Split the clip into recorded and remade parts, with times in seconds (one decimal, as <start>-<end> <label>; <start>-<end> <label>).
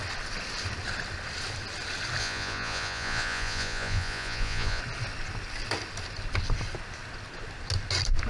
0.0-2.2 recorded; 2.2-4.8 remade; 4.8-8.3 recorded